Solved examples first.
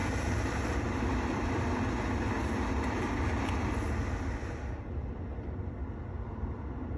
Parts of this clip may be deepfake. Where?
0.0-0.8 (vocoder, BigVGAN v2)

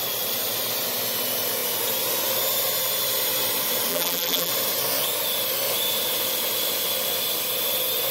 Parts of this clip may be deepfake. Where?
3.9-4.5 (vocoder, BigVGAN v2)

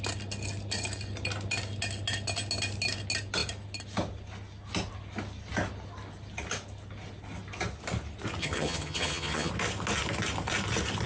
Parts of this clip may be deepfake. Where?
8.4-9.5 (vocoder, HiFi-GAN)

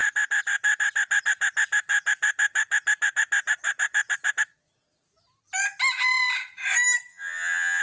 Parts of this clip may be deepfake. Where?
7.1-7.8 (vocoder, HiFi-GAN)

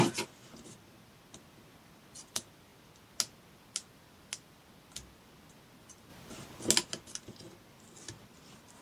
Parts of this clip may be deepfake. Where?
none

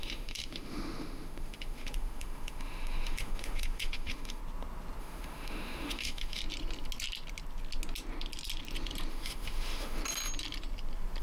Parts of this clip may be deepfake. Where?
0.0-4.4 (autoencoder, DAC-VAE); 5.0-6.4; 9.1-10.0

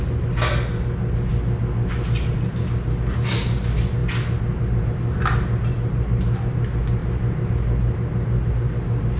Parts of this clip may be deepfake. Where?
none